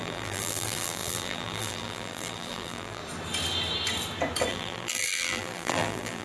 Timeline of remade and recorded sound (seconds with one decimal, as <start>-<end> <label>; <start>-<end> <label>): 0.0-3.0 remade; 3.0-4.5 recorded; 4.5-6.2 remade